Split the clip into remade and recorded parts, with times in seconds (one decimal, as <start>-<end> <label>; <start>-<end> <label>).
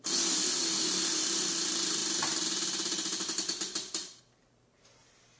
0.0-0.6 recorded; 0.6-1.1 remade; 1.1-2.0 recorded; 2.0-4.2 remade; 4.2-5.4 recorded